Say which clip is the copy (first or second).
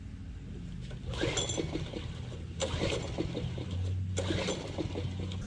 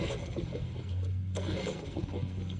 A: second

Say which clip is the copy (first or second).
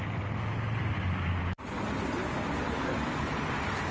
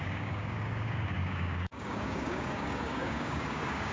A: second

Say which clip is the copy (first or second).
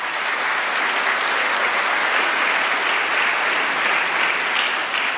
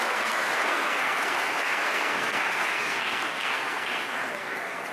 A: second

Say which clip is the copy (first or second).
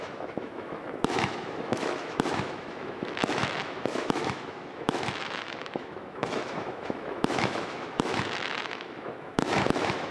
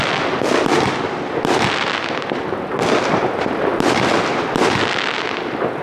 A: first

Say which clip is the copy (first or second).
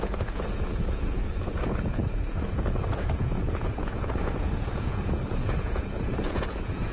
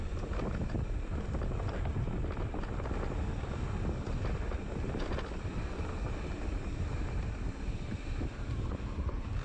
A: first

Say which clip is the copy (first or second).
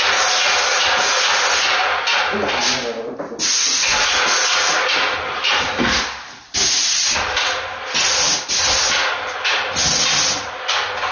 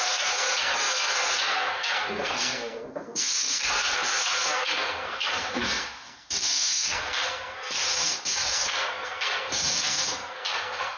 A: second